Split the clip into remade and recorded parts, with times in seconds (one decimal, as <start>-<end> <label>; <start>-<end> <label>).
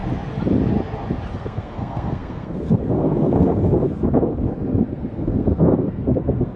0.0-1.3 recorded; 1.3-6.6 remade